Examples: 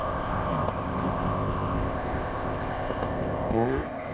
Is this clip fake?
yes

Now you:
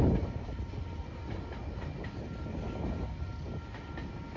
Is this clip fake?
no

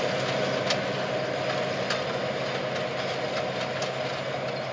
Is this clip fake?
no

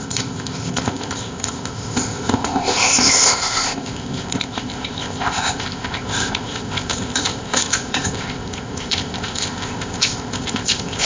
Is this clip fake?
yes